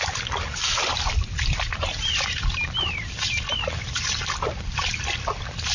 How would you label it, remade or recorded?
recorded